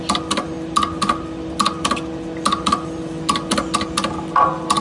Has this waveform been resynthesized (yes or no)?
no